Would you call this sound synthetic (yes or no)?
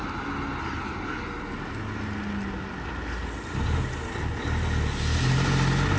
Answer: no